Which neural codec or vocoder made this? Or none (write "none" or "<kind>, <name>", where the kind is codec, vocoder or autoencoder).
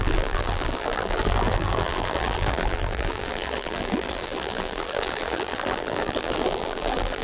vocoder, BigVGAN v2